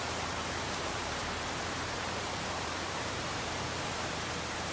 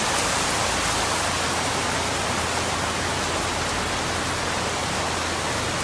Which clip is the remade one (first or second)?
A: first